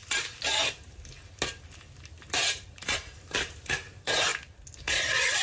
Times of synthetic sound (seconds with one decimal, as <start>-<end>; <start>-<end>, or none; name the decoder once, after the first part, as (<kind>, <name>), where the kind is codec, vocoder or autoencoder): 2.5-4.3 (vocoder, BigVGAN v2); 4.8-5.4